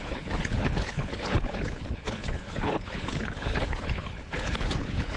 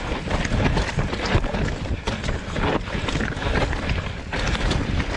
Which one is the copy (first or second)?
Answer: first